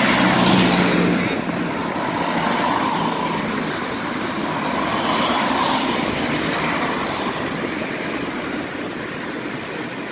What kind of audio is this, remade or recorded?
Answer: recorded